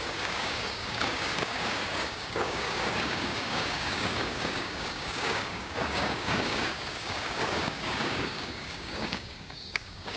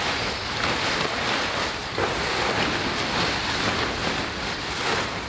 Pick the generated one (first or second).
first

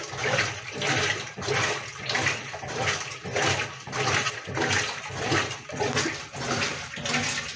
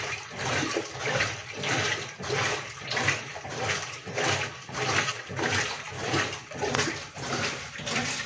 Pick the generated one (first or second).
second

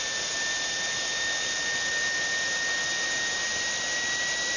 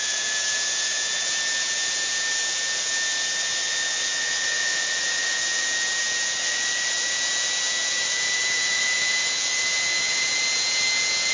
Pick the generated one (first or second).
second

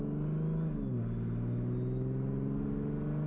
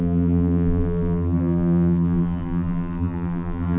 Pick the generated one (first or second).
second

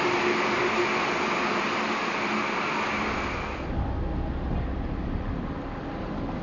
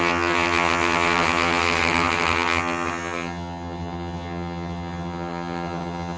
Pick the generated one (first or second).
second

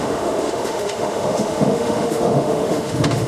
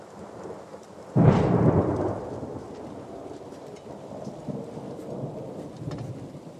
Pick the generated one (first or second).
first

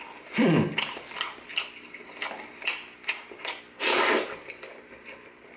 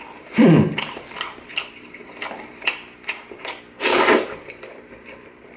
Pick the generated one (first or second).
second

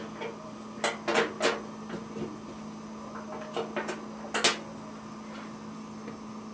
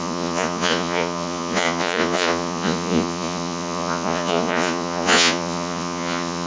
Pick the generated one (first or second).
second